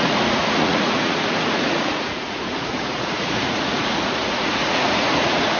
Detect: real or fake fake